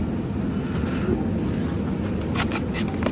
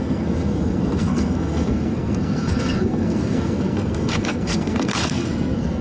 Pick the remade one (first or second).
second